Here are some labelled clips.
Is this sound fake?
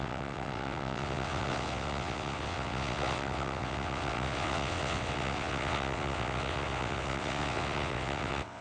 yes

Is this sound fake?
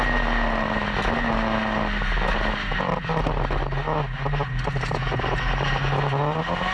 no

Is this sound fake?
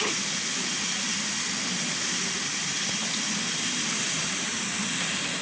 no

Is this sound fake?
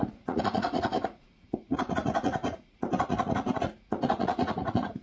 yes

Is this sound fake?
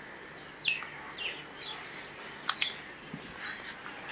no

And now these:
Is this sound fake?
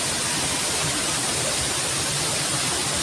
no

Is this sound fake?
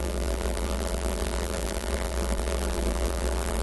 yes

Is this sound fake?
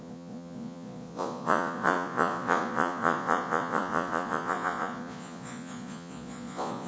yes